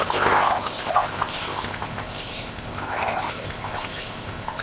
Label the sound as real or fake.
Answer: fake